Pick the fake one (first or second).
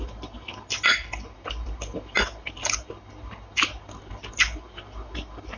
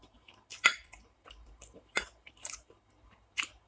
second